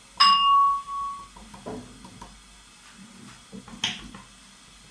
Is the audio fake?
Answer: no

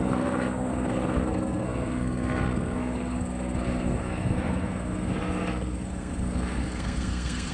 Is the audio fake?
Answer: yes